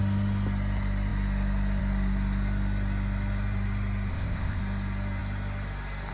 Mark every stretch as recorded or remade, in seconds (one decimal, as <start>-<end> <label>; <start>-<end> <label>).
0.0-4.1 recorded; 4.1-4.6 remade; 4.6-6.1 recorded